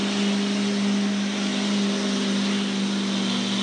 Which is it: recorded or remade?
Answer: recorded